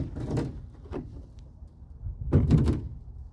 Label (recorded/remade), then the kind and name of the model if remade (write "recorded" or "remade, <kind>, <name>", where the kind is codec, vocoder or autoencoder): recorded